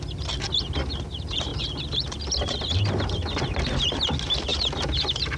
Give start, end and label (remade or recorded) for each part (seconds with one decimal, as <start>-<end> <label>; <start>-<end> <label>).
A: 0.0-1.5 recorded; 1.5-3.4 remade; 3.4-4.5 recorded; 4.5-5.4 remade